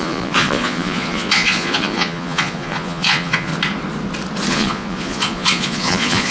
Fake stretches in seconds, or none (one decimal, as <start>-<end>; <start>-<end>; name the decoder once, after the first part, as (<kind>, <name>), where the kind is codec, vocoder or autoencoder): 0.0-3.5 (vocoder, Vocos); 4.5-6.3